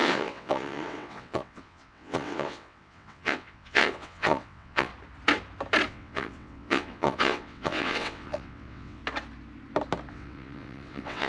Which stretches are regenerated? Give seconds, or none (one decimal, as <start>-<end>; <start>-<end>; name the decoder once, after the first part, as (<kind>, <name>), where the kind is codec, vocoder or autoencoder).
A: 0.0-4.9 (vocoder, WaveNeXt); 5.9-9.0; 10.1-11.3